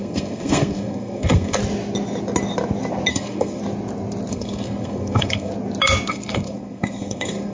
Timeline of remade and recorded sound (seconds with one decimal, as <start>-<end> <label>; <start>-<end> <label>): 0.0-1.6 remade; 1.6-3.1 recorded; 3.1-3.6 remade; 3.6-4.3 recorded; 4.3-5.5 remade; 5.5-6.1 recorded; 6.1-7.5 remade